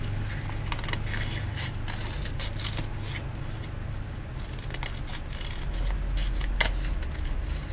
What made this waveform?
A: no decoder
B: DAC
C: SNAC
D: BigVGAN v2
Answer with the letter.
A